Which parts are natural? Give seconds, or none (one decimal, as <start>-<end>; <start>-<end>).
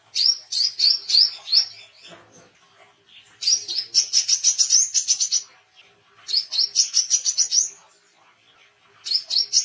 0.0-9.6